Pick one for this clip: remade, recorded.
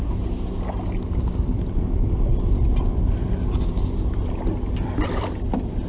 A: recorded